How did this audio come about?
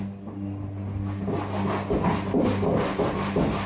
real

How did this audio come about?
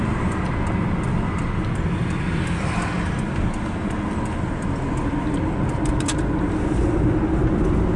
real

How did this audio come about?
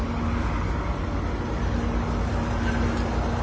real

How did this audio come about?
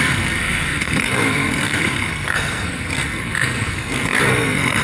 fake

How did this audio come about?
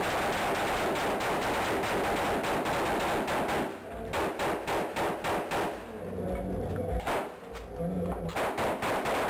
real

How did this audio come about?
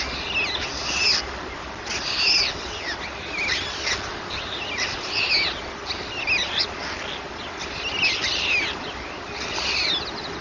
real